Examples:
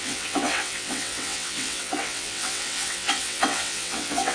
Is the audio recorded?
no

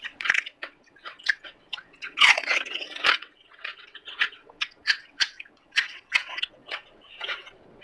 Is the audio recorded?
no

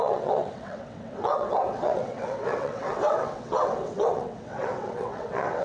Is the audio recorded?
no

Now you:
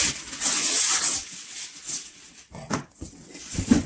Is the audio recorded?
no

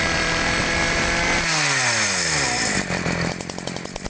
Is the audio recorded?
yes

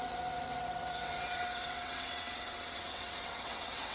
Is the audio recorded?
no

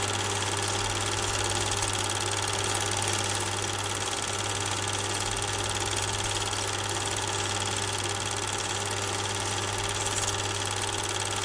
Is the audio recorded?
yes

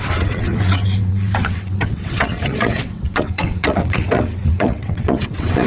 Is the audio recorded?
no